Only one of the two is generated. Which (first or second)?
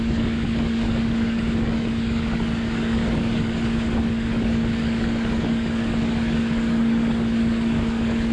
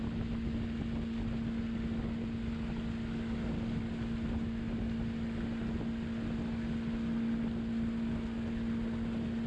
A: first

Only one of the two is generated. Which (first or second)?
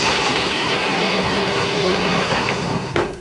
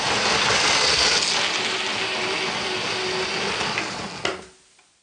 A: first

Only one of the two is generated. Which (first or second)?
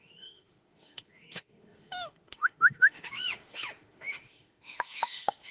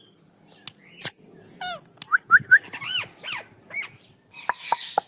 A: first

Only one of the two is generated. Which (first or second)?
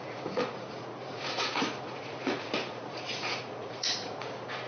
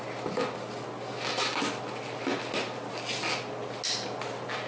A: first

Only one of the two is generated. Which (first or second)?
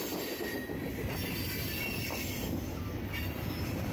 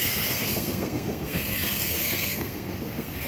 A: second